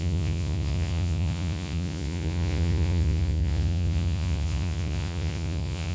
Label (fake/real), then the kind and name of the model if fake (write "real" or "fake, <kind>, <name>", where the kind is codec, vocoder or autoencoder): fake, vocoder, Vocos